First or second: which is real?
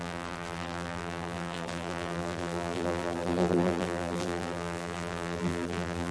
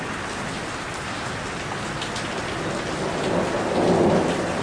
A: second